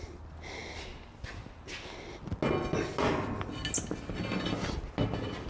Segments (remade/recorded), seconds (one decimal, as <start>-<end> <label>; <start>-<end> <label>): 0.0-5.5 recorded